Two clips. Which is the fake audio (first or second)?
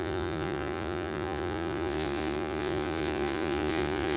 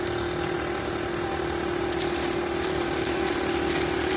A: first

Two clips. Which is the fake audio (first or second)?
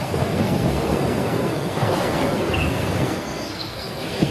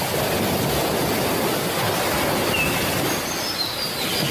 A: first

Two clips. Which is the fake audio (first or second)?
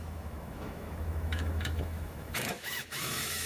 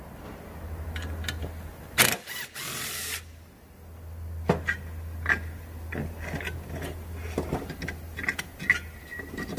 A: first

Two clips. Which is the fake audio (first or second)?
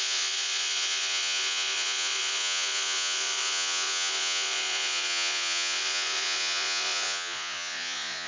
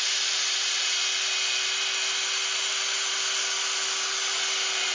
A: first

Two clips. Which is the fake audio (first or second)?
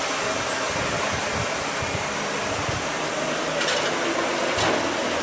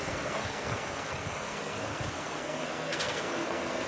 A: second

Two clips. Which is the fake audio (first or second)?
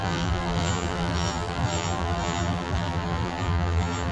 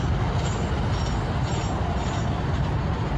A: first